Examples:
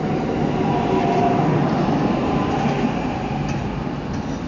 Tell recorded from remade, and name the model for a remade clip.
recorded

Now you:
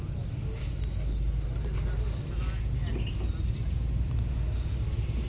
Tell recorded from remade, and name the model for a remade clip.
recorded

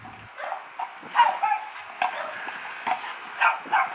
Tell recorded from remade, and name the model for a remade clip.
recorded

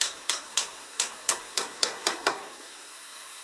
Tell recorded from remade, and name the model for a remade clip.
remade, codec, SNAC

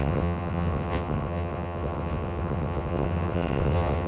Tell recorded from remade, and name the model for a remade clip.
remade, vocoder, WaveNeXt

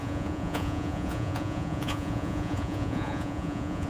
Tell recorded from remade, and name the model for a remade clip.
remade, vocoder, Vocos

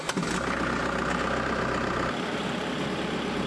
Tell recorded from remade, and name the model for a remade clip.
recorded